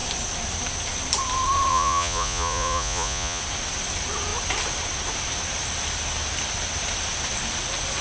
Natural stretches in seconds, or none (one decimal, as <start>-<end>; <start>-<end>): 0.0-1.7; 3.4-8.0